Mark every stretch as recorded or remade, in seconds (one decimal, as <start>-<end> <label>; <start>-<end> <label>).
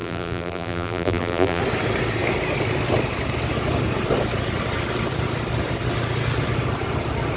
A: 0.0-1.6 remade; 1.6-7.4 recorded